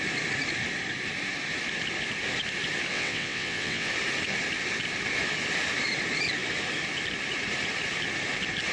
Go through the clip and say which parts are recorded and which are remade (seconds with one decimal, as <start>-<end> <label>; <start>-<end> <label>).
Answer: 0.0-2.9 recorded; 2.9-3.9 remade; 3.9-8.7 recorded